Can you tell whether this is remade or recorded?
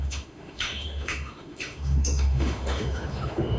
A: remade